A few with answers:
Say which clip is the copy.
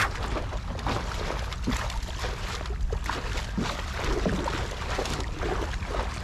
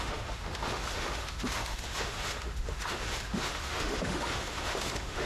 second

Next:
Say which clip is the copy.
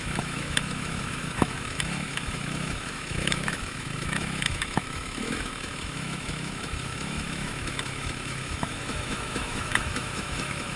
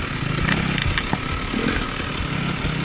first